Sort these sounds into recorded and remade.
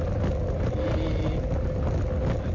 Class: recorded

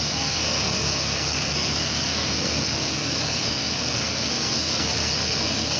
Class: remade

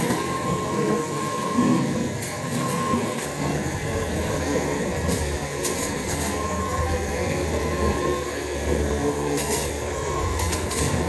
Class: remade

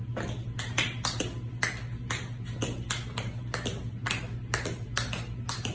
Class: recorded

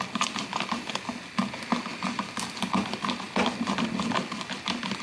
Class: recorded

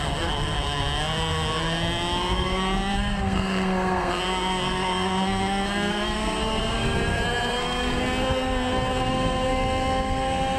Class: remade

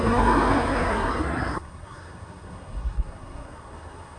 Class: remade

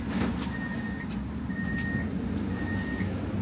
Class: recorded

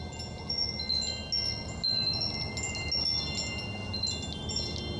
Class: recorded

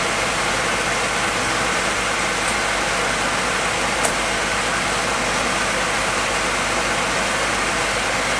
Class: recorded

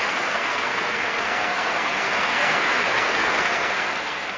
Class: remade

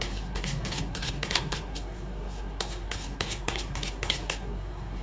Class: remade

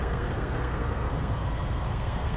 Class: remade